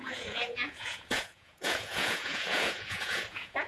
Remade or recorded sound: remade